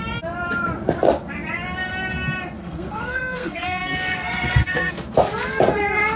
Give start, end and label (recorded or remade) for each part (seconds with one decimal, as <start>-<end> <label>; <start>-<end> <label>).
0.0-2.6 recorded; 2.6-4.9 remade; 4.9-6.2 recorded